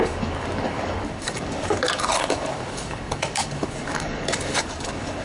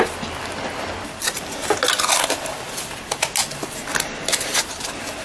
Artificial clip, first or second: first